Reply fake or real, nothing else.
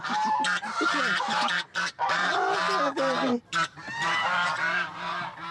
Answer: fake